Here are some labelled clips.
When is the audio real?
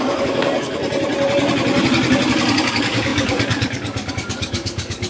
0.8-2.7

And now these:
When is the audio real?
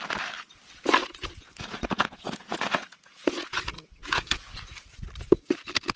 0.0-1.0; 4.6-6.0